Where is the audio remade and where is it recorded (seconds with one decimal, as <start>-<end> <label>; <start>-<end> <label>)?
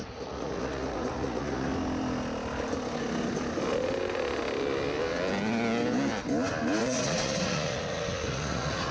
0.0-1.7 remade; 1.7-6.8 recorded; 6.8-8.9 remade